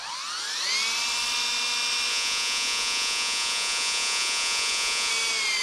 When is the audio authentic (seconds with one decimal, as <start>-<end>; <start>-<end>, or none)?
0.0-2.1; 5.1-5.6